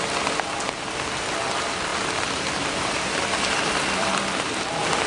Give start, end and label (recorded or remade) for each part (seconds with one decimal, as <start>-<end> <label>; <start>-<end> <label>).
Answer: 0.0-5.1 remade

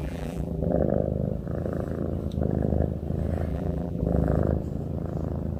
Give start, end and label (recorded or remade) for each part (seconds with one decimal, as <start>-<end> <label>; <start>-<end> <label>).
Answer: 0.0-0.8 remade; 0.8-3.5 recorded; 3.5-4.4 remade; 4.4-5.6 recorded

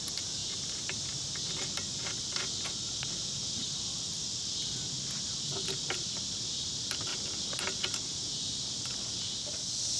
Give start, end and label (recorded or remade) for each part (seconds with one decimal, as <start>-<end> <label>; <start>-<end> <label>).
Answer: 0.0-10.0 recorded